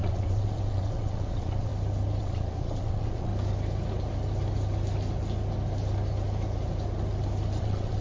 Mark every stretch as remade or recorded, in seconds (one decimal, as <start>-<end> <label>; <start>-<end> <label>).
0.0-1.7 remade; 1.7-2.2 recorded; 2.2-3.3 remade; 3.3-7.6 recorded; 7.6-8.0 remade